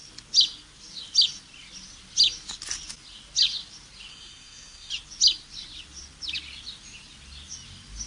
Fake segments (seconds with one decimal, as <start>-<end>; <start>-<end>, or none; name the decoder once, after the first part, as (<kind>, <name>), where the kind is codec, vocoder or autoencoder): 4.1-4.9 (codec, SNAC)